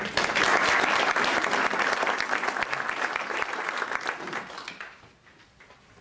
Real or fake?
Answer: real